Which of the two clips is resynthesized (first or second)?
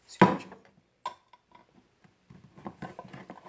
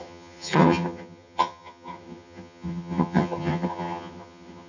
second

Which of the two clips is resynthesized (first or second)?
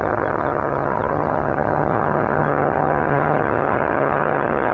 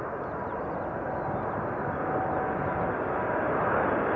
first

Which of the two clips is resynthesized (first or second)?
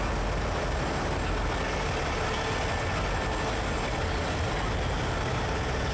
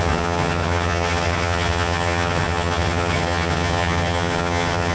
second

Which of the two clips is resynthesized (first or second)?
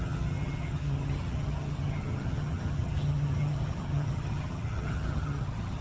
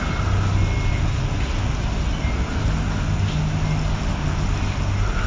first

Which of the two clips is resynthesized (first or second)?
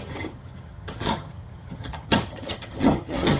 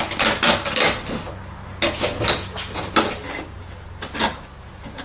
first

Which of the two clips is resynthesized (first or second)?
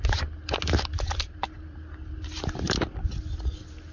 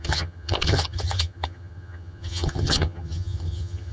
second